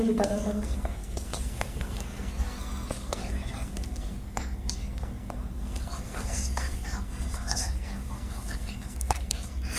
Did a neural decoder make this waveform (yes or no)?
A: yes